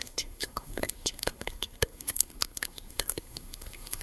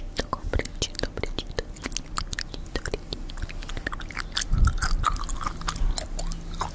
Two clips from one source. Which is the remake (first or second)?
first